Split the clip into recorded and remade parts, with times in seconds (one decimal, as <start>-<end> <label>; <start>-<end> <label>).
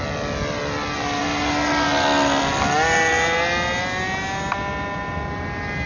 0.0-5.9 recorded